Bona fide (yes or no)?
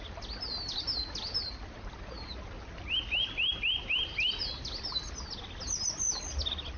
yes